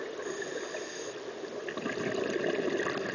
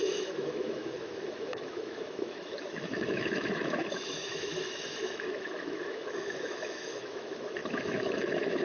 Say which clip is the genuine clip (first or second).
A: first